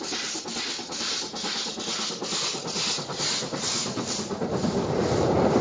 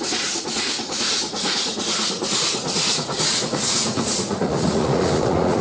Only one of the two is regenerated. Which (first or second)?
second